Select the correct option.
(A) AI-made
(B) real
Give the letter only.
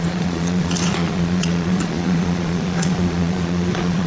A